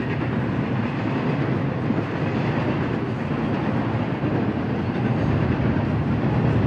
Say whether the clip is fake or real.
real